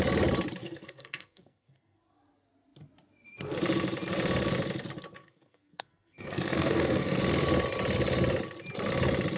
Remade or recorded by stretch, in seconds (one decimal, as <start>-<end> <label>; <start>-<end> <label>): 0.0-0.6 recorded; 0.6-2.0 remade; 2.0-5.2 recorded; 5.2-7.2 remade; 7.2-9.4 recorded